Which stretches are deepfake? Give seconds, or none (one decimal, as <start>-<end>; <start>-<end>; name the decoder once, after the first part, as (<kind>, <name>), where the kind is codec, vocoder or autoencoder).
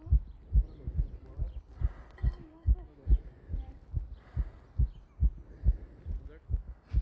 2.4-3.0 (autoencoder, DAC-VAE)